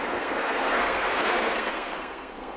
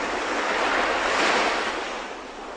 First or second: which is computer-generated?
first